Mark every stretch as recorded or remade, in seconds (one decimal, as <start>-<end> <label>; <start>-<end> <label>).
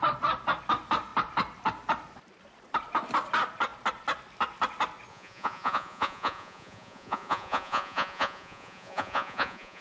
0.0-5.1 recorded; 5.1-9.8 remade